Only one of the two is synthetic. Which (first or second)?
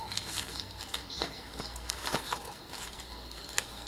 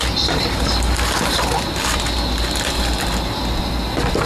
first